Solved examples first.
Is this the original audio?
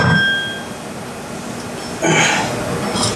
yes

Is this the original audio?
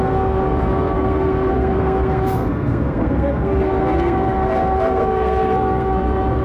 no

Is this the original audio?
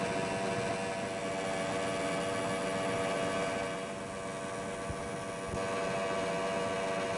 yes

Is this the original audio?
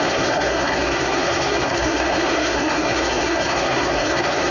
no